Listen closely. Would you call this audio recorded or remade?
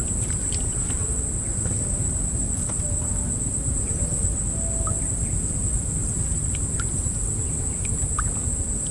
recorded